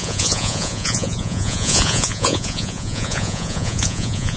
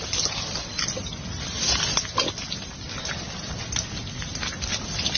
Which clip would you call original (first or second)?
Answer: second